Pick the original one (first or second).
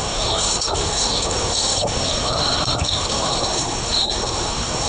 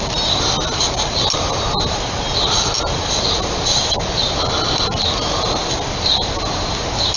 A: second